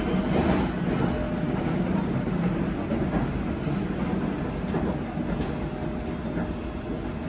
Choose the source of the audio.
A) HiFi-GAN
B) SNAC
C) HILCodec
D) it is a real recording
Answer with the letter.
D